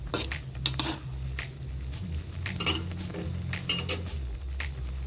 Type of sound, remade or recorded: recorded